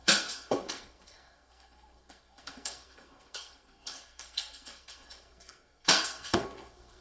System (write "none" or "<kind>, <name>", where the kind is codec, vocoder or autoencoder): codec, SNAC